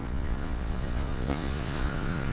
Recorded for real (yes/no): no